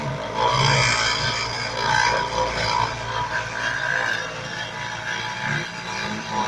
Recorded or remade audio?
recorded